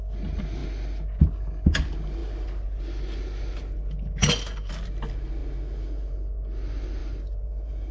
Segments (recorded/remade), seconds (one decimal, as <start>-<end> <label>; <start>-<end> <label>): 0.0-7.0 recorded; 7.0-7.9 remade